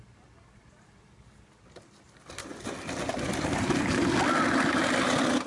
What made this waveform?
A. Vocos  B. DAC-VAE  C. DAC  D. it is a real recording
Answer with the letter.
D